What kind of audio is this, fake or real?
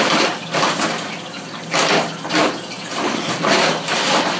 real